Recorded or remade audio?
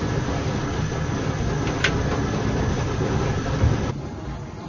recorded